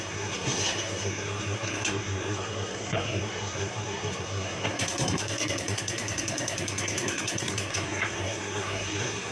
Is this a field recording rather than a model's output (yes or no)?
no